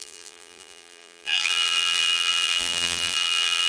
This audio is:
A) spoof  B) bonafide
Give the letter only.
A